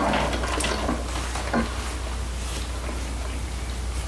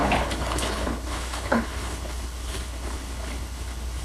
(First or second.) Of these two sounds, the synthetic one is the second